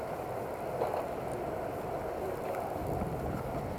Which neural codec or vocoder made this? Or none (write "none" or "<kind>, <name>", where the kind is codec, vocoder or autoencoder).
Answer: none